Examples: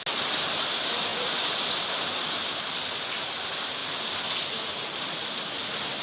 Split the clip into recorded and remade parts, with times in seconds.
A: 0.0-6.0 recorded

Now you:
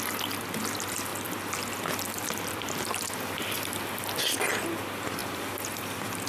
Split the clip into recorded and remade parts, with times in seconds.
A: 0.0-1.1 recorded; 1.1-3.1 remade; 3.1-5.2 recorded; 5.2-6.3 remade

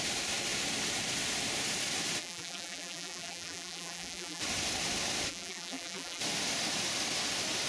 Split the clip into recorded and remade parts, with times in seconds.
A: 0.0-2.2 recorded; 2.2-4.4 remade; 4.4-5.3 recorded; 5.3-6.2 remade; 6.2-7.7 recorded

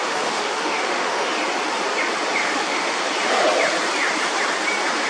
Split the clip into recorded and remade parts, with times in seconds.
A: 0.0-1.3 remade; 1.3-2.4 recorded; 2.4-3.0 remade; 3.0-5.1 recorded

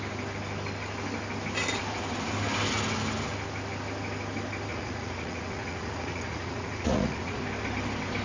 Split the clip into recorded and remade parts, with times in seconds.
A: 0.0-4.7 recorded; 4.7-7.4 remade; 7.4-8.2 recorded

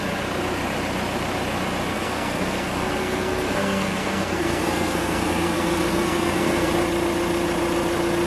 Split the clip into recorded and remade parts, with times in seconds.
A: 0.0-1.9 recorded; 1.9-6.7 remade; 6.7-8.3 recorded